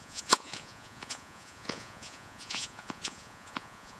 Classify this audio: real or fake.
fake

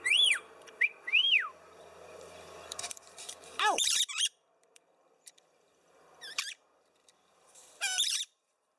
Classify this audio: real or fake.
fake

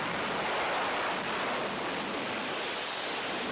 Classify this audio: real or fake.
real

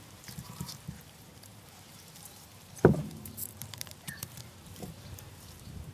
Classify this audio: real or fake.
fake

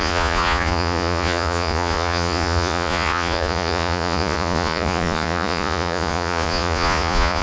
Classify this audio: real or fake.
fake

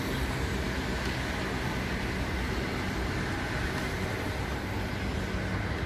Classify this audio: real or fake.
real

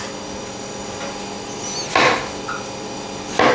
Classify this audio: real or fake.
real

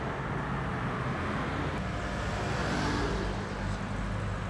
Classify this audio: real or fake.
real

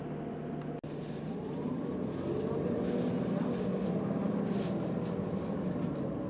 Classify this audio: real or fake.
real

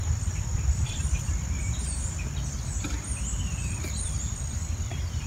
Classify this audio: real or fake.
fake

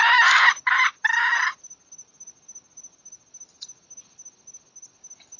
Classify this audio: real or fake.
real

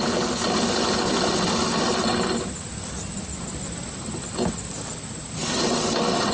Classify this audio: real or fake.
real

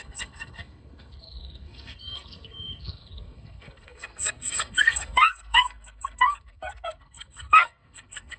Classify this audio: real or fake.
fake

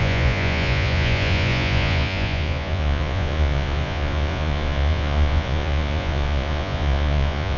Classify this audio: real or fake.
fake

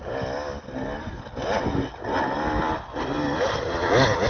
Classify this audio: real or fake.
real